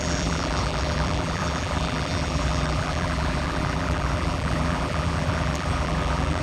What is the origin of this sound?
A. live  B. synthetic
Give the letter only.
B